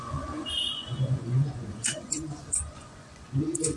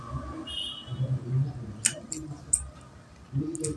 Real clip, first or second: second